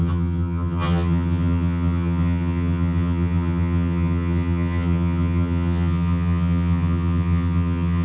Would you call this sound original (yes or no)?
no